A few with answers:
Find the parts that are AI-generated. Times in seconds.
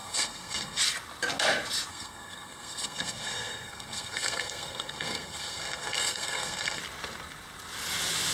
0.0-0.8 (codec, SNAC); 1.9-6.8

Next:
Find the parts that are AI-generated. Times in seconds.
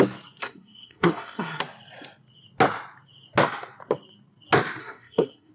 0.4-1.6 (codec, SNAC); 4.8-5.5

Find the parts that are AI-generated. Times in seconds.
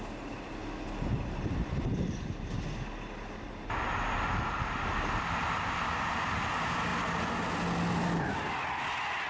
none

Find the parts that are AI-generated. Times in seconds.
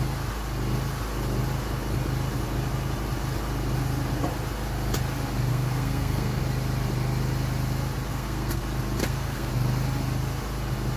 5.5-6.4 (codec, SNAC); 8.1-8.6; 9.0-9.5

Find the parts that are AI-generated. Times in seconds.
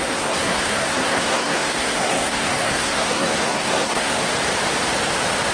0.0-4.3 (codec, SNAC)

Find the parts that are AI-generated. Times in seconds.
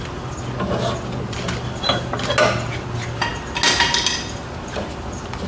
none